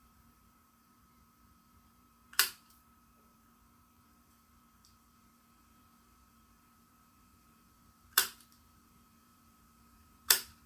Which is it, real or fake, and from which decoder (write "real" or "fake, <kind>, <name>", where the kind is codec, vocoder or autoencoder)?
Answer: fake, vocoder, BigVGAN v2